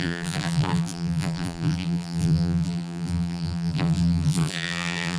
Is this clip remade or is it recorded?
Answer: remade